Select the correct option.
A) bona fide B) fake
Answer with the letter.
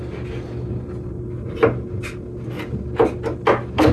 A